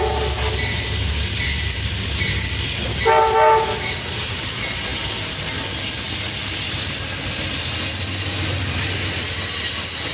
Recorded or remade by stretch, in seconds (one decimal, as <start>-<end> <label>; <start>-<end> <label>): 0.0-10.1 recorded